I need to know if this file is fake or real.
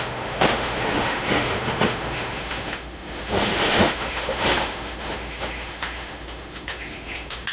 fake